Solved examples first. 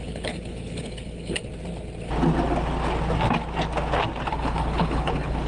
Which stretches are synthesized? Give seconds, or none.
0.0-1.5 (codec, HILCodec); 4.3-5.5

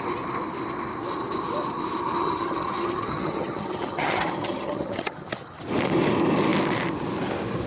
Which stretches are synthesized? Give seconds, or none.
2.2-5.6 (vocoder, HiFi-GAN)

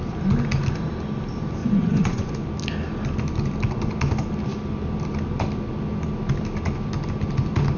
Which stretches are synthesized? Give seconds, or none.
1.6-2.3 (vocoder, Vocos)

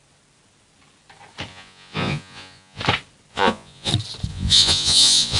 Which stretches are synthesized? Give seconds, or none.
1.5-2.8 (vocoder, Vocos); 3.3-3.9; 4.3-5.4

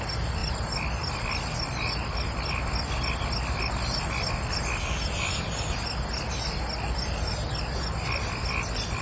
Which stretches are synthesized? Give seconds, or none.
none

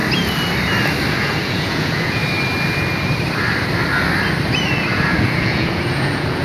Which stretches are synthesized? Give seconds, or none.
1.1-2.2 (vocoder, Vocos); 4.9-6.4

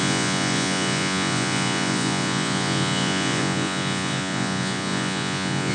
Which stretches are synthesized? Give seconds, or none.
0.0-5.7 (vocoder, Vocos)

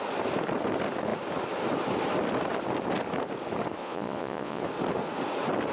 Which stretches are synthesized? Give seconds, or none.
3.8-4.6 (vocoder, Vocos)